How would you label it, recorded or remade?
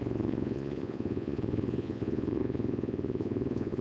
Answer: remade